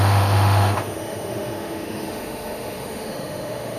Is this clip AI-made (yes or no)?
yes